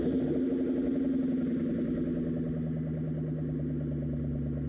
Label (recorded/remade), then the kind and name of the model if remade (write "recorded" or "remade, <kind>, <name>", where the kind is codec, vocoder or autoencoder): recorded